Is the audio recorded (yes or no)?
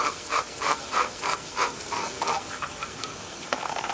no